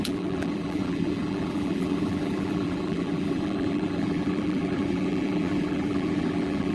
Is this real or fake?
fake